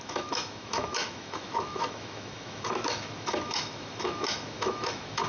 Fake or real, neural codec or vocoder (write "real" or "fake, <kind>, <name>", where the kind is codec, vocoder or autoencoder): fake, autoencoder, DAC-VAE